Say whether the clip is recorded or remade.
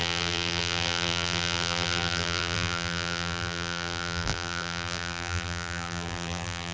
remade